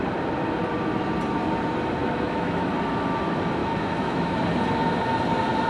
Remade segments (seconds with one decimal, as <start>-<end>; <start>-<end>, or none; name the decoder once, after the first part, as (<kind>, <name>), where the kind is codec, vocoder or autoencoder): 2.0-2.7 (autoencoder, DAC-VAE); 3.6-4.3